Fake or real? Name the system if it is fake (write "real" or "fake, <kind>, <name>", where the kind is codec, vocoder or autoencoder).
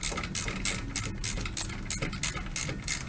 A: real